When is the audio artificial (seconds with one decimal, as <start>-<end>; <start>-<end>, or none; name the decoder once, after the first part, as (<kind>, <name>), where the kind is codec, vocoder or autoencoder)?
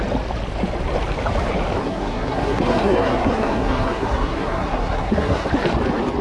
1.8-5.5 (codec, SNAC)